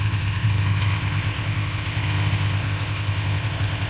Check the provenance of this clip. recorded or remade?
remade